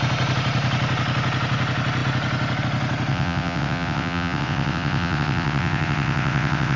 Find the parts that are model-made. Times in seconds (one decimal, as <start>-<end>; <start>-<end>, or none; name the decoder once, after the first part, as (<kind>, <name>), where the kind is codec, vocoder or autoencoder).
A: 3.1-6.8 (vocoder, WaveNeXt)